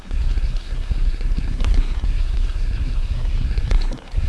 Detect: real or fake fake